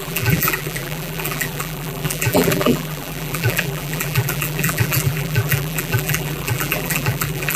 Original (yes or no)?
no